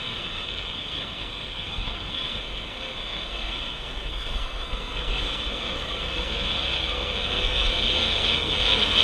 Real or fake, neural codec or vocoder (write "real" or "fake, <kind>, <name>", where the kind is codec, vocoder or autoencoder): fake, codec, SNAC